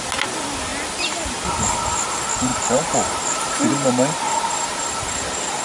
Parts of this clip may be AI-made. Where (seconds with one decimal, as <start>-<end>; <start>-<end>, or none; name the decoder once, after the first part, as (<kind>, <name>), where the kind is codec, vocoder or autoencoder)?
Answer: none